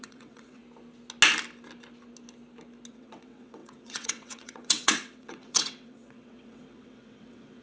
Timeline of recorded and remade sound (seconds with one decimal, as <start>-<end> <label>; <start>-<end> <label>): 0.0-0.6 remade; 0.6-2.9 recorded; 2.9-7.6 remade

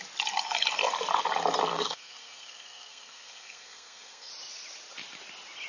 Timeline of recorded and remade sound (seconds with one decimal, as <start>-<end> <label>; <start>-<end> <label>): 0.0-1.7 recorded; 1.7-4.3 remade; 4.3-5.7 recorded

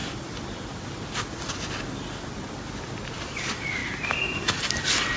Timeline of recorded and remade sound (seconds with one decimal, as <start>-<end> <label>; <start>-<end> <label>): 0.0-5.2 recorded

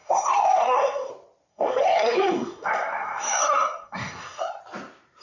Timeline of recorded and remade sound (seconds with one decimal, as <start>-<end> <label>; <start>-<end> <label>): 0.0-1.1 remade; 1.1-1.5 recorded; 1.5-4.6 remade; 4.6-5.2 recorded

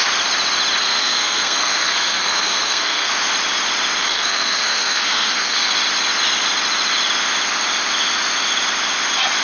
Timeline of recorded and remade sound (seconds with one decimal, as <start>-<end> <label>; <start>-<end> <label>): 0.0-0.8 recorded; 0.8-3.1 remade; 3.1-4.0 recorded; 4.0-5.7 remade; 5.7-9.4 recorded